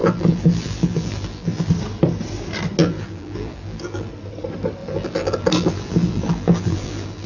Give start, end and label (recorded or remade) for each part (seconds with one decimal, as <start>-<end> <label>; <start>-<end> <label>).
0.0-1.7 remade; 1.7-2.8 recorded; 2.8-4.1 remade; 4.1-4.8 recorded; 4.8-7.3 remade